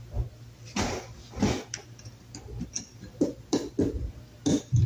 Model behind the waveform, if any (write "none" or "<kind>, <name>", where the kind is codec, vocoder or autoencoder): none